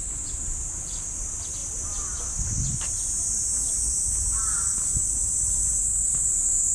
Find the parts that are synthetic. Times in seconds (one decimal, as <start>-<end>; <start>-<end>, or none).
1.6-4.0